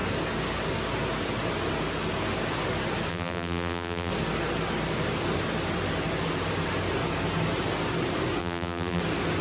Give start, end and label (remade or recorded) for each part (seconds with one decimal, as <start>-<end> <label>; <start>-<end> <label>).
0.0-3.1 recorded; 3.1-4.1 remade; 4.1-8.4 recorded; 8.4-9.0 remade; 9.0-9.4 recorded